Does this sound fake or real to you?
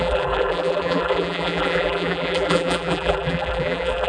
fake